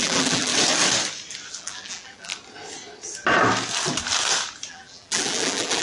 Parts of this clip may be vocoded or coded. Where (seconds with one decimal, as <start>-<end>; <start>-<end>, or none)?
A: 0.0-0.5; 1.5-2.3; 4.7-5.8